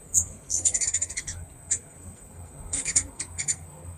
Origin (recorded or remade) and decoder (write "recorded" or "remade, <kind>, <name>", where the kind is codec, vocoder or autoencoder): remade, codec, SNAC